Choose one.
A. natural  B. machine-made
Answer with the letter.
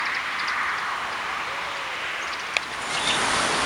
A